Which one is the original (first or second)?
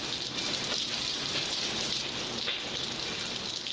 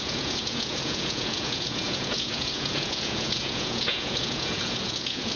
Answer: first